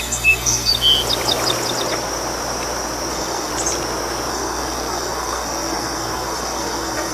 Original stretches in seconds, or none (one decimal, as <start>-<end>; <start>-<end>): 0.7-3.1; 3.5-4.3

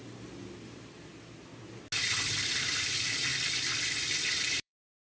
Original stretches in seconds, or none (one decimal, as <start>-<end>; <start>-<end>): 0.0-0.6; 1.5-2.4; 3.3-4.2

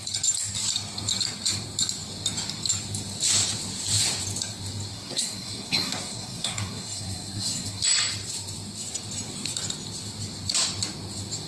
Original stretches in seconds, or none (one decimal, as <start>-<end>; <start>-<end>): 0.0-4.9; 7.8-11.5

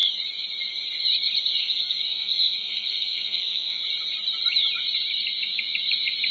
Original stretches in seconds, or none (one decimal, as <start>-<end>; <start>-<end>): 0.0-1.6; 3.8-6.3